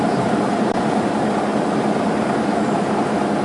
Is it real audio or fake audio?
fake